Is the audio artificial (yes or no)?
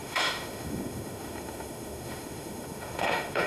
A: yes